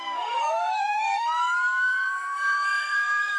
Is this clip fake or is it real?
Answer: fake